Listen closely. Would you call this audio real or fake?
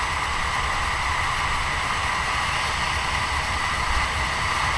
real